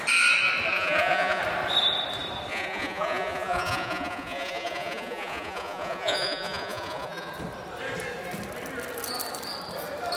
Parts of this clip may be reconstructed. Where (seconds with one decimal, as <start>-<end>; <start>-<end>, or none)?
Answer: 0.7-1.4; 2.5-7.3